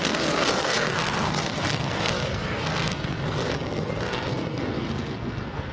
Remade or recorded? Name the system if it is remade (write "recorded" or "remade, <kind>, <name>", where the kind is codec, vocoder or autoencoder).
remade, codec, SNAC